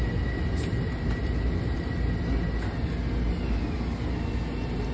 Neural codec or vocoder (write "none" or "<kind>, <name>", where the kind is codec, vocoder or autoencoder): none